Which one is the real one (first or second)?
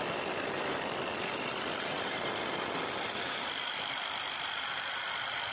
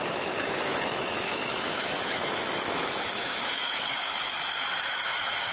first